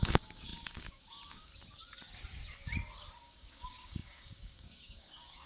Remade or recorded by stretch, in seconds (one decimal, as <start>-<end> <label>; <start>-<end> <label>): 0.0-1.5 remade; 1.5-3.2 recorded; 3.2-5.5 remade

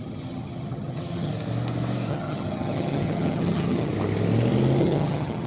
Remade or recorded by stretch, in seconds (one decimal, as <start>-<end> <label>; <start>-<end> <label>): 0.0-1.3 remade; 1.3-2.1 recorded; 2.1-3.9 remade; 3.9-4.8 recorded; 4.8-5.5 remade

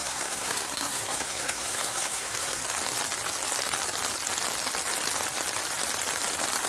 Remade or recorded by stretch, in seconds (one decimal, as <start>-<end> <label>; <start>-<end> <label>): 0.0-2.6 remade; 2.6-6.7 recorded

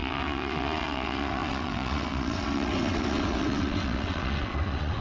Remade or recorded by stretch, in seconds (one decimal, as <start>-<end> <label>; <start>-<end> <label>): 0.0-5.0 remade

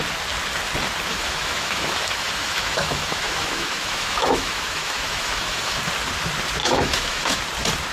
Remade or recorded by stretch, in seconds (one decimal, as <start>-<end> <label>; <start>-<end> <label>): 0.0-1.1 recorded; 1.1-5.8 remade; 5.8-6.6 recorded; 6.6-7.4 remade; 7.4-7.9 recorded

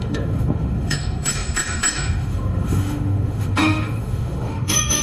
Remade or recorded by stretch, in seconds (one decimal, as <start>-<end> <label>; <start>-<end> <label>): 0.0-5.0 remade

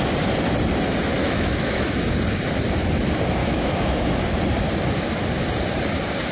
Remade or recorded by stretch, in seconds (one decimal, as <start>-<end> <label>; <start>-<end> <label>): 0.0-1.2 recorded; 1.2-2.0 remade; 2.0-3.4 recorded; 3.4-4.1 remade; 4.1-6.3 recorded